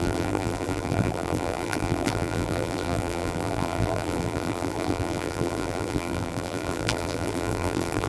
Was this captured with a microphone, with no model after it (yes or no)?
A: no